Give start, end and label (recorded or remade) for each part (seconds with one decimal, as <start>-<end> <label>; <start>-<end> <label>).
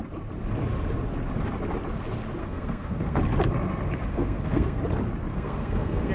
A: 0.0-2.4 recorded; 2.4-3.2 remade; 3.2-4.1 recorded; 4.1-4.8 remade; 4.8-5.3 recorded; 5.3-6.1 remade